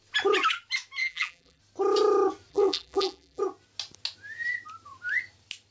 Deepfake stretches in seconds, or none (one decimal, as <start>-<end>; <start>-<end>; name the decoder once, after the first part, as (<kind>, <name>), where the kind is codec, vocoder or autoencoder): 1.0-1.6 (vocoder, BigVGAN v2); 2.5-3.4

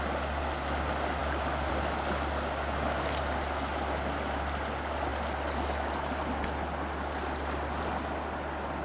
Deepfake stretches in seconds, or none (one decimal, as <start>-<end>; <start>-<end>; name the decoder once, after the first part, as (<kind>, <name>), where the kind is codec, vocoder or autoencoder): none